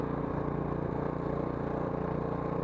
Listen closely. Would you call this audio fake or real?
real